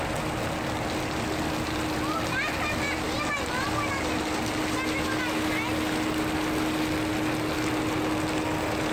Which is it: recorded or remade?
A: recorded